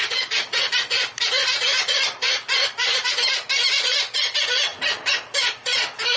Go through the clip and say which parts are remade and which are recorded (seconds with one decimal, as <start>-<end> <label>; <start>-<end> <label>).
0.0-6.2 recorded